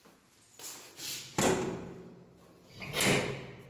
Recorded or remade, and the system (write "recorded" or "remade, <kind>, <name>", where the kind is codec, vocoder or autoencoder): recorded